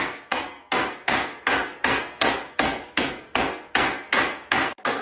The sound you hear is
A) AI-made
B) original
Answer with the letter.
A